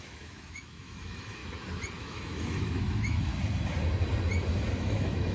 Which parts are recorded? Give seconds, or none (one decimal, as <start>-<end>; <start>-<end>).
1.4-2.0; 3.3-4.8